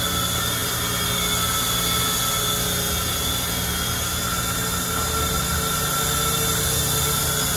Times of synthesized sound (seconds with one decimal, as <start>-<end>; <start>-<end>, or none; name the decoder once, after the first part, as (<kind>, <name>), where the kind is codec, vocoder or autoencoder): none